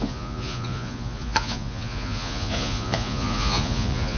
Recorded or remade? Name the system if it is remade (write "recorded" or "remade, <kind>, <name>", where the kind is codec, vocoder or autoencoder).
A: remade, vocoder, Vocos